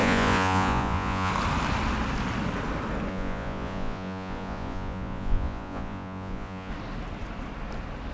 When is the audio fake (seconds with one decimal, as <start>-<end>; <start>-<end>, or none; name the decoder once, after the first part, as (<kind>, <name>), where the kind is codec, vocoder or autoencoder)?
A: 0.0-1.3 (vocoder, Vocos); 3.1-6.7